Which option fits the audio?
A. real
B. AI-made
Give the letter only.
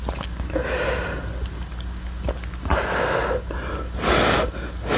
A